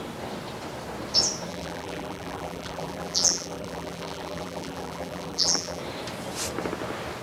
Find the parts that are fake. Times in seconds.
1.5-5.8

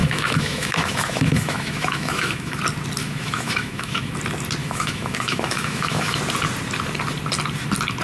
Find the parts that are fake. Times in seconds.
0.0-2.6; 3.0-4.1; 4.6-6.2

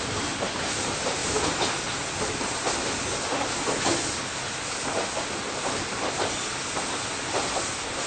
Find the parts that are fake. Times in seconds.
none

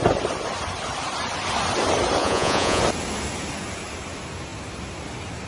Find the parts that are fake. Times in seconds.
2.2-2.8

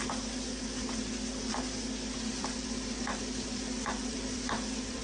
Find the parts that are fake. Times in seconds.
2.3-5.0

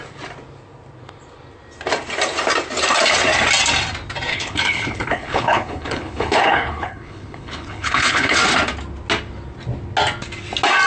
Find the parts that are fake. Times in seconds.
4.3-8.4

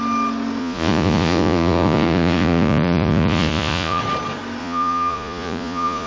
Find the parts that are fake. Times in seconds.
0.6-4.0; 4.6-6.1

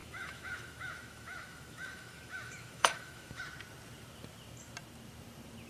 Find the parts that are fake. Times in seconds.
0.0-3.4